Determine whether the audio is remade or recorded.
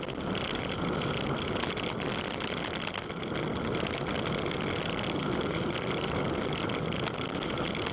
recorded